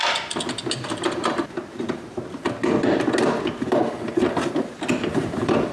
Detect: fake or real real